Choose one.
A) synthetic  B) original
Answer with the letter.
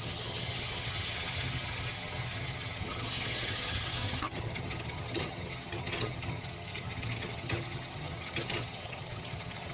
A